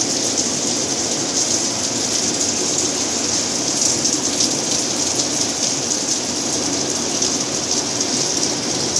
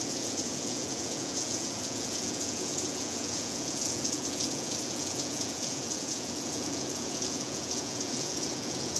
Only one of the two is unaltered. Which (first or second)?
first